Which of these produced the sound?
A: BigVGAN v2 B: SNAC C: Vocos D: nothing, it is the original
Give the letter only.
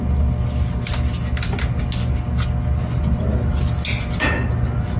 D